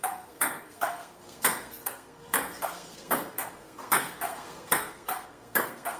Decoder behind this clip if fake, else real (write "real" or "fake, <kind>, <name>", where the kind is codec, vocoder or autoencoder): fake, codec, SNAC